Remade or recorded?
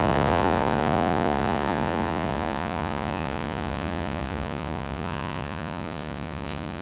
remade